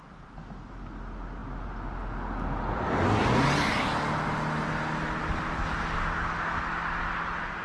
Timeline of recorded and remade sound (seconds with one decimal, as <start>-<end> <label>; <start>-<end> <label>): 0.0-7.6 recorded